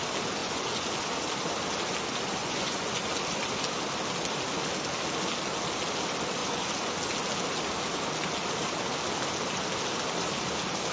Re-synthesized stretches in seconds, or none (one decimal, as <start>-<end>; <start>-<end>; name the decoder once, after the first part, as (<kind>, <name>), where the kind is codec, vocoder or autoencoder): 0.4-1.0 (vocoder, Vocos); 2.4-3.1; 6.4-6.9